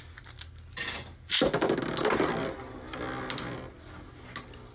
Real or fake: real